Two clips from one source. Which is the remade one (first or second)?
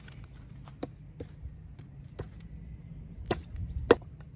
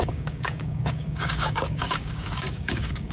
second